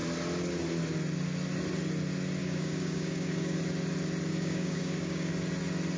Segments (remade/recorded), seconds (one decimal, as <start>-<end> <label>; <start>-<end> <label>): 0.0-2.4 recorded; 2.4-3.6 remade; 3.6-4.3 recorded; 4.3-5.3 remade; 5.3-6.0 recorded